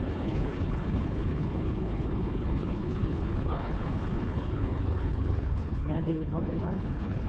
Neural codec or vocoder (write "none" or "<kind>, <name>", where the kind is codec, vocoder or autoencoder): codec, HILCodec